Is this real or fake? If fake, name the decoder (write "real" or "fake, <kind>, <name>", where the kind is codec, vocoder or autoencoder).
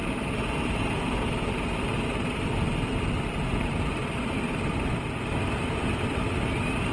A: real